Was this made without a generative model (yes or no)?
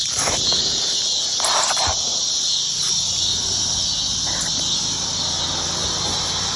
yes